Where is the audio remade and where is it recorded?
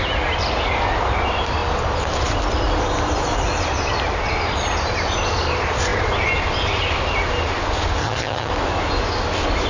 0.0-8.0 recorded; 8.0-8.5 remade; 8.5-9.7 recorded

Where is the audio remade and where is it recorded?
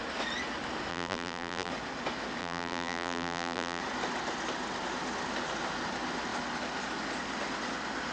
0.0-0.9 recorded; 0.9-1.7 remade; 1.7-2.4 recorded; 2.4-3.8 remade; 3.8-8.1 recorded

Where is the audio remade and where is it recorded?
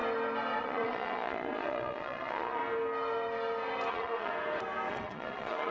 0.0-0.6 recorded; 0.6-2.6 remade; 2.6-3.9 recorded; 3.9-4.3 remade; 4.3-4.9 recorded; 4.9-5.7 remade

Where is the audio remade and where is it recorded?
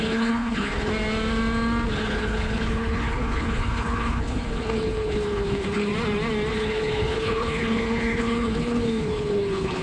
0.0-0.9 remade; 0.9-1.9 recorded; 1.9-5.9 remade; 5.9-6.5 recorded; 6.5-9.8 remade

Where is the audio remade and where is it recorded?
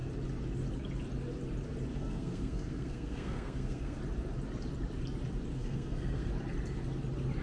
0.0-1.9 recorded; 1.9-4.0 remade; 4.0-5.5 recorded; 5.5-6.3 remade; 6.3-7.4 recorded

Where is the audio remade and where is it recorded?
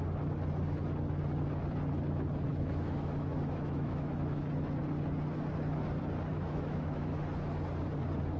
0.0-2.5 recorded; 2.5-4.4 remade; 4.4-6.3 recorded; 6.3-7.2 remade; 7.2-8.4 recorded